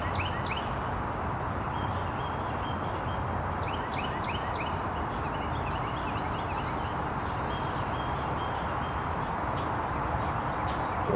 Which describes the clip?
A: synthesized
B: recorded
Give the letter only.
B